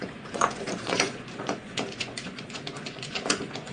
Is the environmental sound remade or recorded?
remade